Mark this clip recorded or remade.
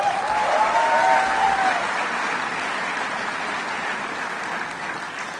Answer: recorded